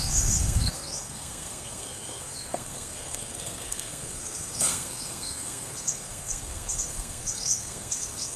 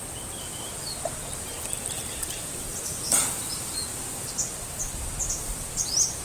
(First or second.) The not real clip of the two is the first